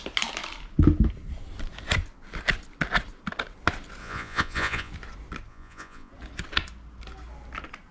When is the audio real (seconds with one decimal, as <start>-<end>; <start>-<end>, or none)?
0.0-4.0; 4.9-5.5; 6.1-7.9